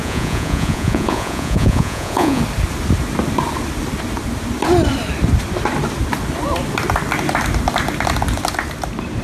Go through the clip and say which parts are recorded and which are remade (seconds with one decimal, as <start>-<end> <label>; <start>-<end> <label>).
0.0-2.4 remade; 2.4-9.2 recorded